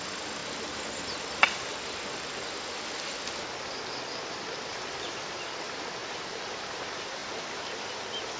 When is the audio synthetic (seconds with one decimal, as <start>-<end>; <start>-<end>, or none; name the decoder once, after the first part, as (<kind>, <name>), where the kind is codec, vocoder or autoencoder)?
6.0-6.6 (vocoder, BigVGAN v2); 7.2-7.8